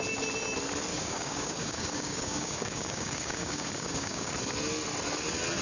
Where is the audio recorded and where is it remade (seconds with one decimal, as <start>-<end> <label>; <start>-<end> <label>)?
0.0-0.9 recorded; 0.9-4.3 remade; 4.3-5.6 recorded